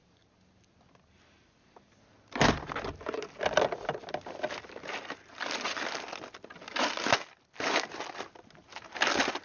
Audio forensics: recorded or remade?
recorded